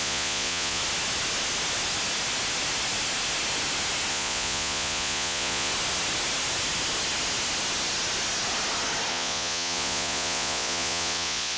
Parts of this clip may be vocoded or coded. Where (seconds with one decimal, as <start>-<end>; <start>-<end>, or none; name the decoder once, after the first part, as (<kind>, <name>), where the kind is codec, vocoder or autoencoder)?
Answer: 0.0-0.8 (vocoder, Vocos); 4.1-5.7; 9.1-11.6